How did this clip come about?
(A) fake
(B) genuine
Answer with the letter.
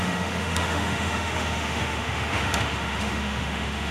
A